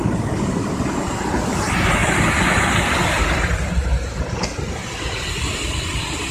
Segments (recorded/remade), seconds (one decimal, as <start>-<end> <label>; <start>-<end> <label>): 0.0-6.3 recorded